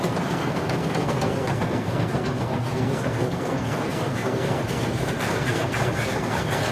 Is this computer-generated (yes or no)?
yes